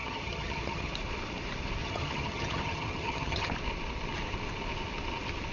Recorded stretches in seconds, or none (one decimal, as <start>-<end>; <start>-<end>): 0.9-1.8; 3.5-5.5